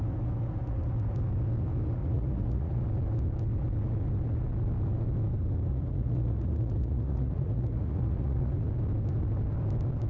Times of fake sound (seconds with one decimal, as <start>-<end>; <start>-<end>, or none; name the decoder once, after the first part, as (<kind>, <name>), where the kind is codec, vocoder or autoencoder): 2.0-2.8 (vocoder, Vocos); 5.7-8.7

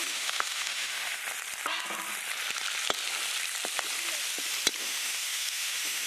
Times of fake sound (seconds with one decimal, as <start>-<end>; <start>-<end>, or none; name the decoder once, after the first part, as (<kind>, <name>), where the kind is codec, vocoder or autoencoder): 0.0-1.2 (autoencoder, DAC-VAE); 4.8-6.1

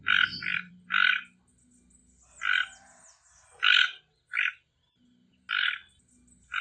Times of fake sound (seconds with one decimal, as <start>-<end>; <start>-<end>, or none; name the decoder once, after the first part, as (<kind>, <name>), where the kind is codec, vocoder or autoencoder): none

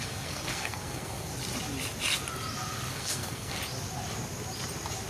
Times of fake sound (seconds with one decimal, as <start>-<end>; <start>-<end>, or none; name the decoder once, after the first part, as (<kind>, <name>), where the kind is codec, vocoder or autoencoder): 0.0-1.3 (codec, SNAC); 2.9-3.6